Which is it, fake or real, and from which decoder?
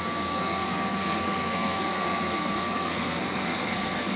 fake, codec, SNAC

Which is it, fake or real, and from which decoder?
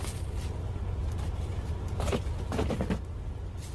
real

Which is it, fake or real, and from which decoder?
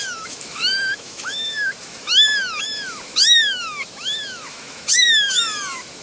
fake, autoencoder, DAC-VAE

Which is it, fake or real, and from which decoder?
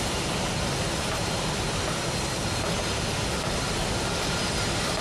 real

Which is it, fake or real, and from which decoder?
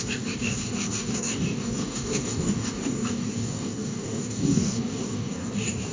fake, codec, DAC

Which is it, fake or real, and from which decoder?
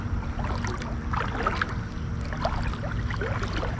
real